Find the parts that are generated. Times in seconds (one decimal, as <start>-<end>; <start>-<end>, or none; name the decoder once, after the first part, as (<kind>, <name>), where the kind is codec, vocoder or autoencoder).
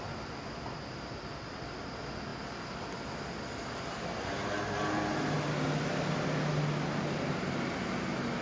none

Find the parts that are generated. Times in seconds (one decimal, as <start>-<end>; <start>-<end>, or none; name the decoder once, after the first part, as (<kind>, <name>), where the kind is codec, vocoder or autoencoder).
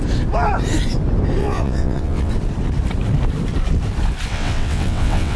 1.4-2.3 (vocoder, WaveNeXt); 4.3-5.4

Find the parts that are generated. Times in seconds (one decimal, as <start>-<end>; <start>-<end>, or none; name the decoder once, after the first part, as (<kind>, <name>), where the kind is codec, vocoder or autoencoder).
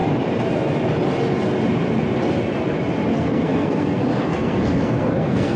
3.1-5.6 (codec, SNAC)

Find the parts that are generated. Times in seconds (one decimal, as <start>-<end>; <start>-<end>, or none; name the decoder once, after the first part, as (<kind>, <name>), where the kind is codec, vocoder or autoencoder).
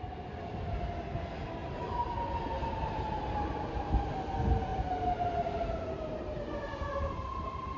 1.6-3.9 (vocoder, BigVGAN v2); 4.7-7.8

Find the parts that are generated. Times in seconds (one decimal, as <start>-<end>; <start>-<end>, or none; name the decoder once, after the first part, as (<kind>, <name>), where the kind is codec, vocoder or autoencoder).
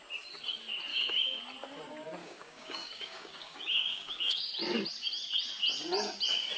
0.9-1.4 (codec, DAC); 2.2-4.5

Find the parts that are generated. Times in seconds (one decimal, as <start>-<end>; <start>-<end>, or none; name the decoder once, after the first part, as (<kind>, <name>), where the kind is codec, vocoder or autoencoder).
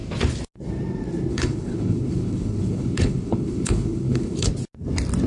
1.3-4.5 (codec, HILCodec)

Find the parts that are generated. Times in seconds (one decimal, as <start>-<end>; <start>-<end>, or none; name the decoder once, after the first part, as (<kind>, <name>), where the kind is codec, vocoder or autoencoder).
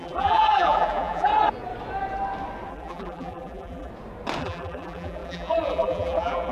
0.0-1.3 (vocoder, BigVGAN v2); 2.7-3.9; 4.4-6.5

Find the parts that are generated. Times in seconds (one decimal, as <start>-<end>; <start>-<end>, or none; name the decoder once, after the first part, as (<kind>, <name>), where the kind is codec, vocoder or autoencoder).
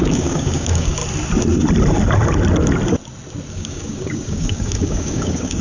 0.0-1.0 (codec, DAC); 3.5-5.6